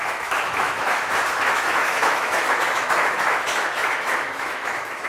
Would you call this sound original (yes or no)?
no